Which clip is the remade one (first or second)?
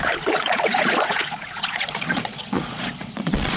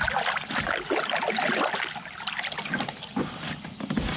first